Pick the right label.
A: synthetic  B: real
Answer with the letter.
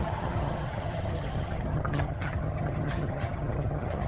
A